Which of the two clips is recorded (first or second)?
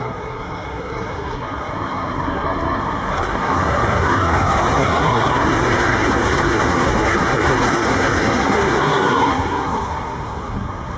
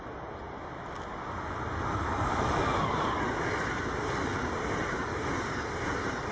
second